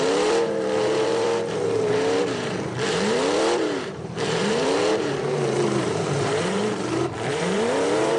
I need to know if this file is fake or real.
fake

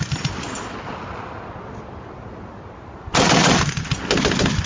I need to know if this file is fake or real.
real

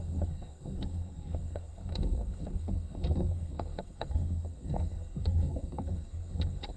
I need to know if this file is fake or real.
fake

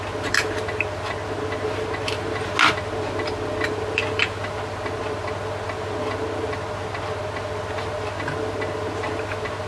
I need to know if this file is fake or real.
real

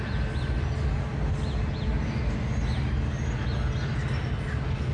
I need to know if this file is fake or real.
real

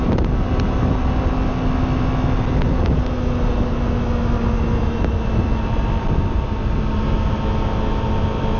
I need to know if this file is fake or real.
real